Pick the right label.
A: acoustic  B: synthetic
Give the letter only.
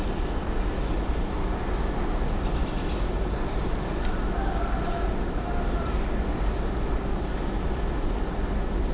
A